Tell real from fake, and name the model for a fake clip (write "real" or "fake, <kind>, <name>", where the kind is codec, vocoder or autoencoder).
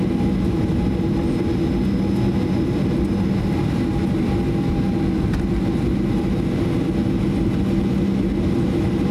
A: real